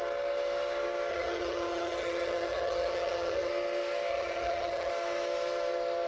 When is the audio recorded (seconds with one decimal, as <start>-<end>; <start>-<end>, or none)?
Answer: 0.0-1.1; 3.5-4.1; 4.9-6.1